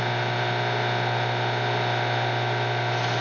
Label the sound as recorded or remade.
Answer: recorded